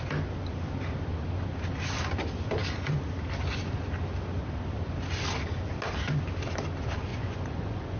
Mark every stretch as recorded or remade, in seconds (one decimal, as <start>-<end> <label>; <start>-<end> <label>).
0.0-7.1 recorded; 7.1-8.0 remade